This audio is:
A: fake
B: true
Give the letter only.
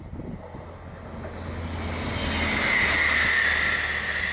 B